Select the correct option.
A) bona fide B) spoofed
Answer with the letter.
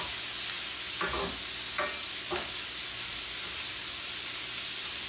A